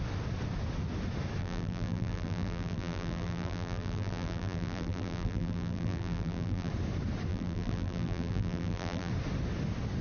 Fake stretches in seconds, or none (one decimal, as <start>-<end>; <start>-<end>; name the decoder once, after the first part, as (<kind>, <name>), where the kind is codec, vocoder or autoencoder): 1.4-6.7 (vocoder, BigVGAN v2); 7.3-9.1